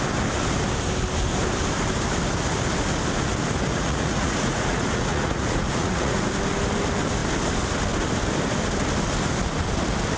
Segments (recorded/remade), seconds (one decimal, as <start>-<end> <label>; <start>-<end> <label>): 0.0-3.7 recorded; 3.7-6.3 remade; 6.3-10.2 recorded